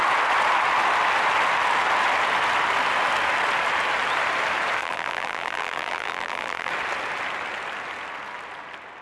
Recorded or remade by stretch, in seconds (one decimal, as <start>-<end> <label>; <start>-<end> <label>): 0.0-4.8 recorded; 4.8-6.7 remade; 6.7-9.0 recorded

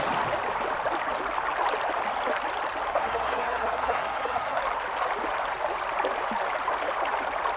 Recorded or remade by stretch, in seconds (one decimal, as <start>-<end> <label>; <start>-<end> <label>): 0.0-2.9 recorded; 2.9-4.6 remade; 4.6-7.6 recorded

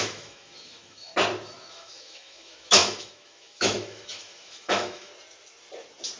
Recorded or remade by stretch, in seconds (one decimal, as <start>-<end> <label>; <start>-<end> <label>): 0.0-1.1 remade; 1.1-1.7 recorded; 1.7-5.1 remade; 5.1-6.2 recorded

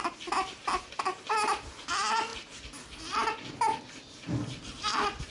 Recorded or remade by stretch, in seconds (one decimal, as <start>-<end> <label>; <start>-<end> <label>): 0.0-5.3 recorded

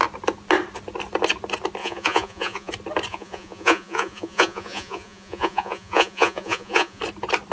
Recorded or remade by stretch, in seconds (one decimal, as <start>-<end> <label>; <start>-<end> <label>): 0.0-1.8 recorded; 1.8-2.7 remade; 2.7-3.1 recorded; 3.1-7.0 remade; 7.0-7.5 recorded

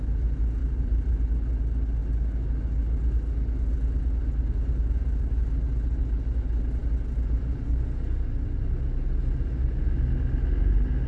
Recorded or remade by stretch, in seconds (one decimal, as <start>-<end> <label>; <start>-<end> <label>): 0.0-0.6 recorded; 0.6-1.2 remade; 1.2-11.1 recorded

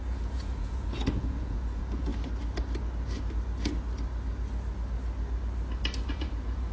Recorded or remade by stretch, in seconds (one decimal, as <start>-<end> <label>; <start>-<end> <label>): 0.0-2.1 remade; 2.1-6.1 recorded; 6.1-6.7 remade

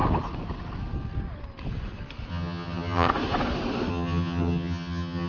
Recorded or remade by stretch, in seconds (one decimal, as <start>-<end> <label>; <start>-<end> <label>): 0.0-2.3 recorded; 2.3-3.1 remade; 3.1-3.9 recorded; 3.9-5.3 remade